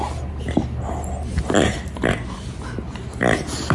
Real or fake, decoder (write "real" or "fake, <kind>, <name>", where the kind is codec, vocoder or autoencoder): real